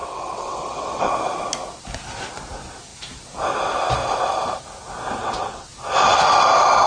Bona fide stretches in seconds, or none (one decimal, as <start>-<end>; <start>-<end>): 1.1-5.2; 5.7-6.9